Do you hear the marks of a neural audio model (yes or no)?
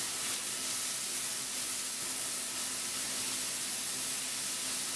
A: no